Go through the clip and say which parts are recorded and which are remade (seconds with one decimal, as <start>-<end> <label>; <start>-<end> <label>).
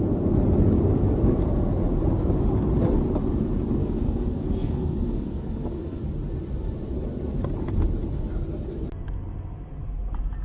0.0-3.8 recorded; 3.8-6.0 remade; 6.0-10.4 recorded